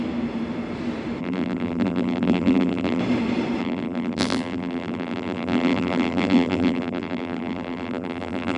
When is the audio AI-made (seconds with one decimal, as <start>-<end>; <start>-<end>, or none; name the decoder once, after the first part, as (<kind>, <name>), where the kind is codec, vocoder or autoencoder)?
1.2-3.0 (vocoder, BigVGAN v2); 3.6-8.6